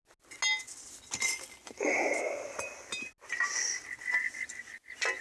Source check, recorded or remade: recorded